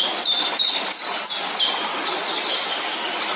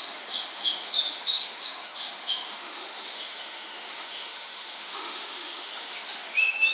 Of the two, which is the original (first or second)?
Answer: first